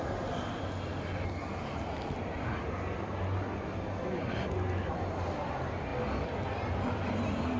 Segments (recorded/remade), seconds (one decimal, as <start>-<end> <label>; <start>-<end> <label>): 0.0-7.6 recorded